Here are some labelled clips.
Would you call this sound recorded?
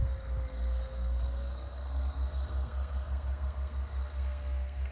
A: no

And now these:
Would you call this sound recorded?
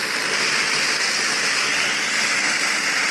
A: yes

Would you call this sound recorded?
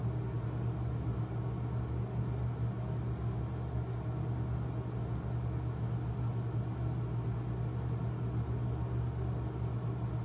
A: yes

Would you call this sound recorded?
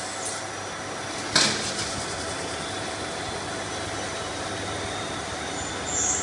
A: yes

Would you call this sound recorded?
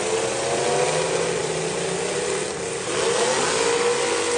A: yes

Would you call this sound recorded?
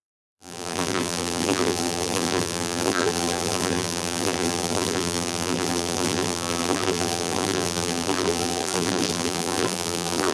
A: no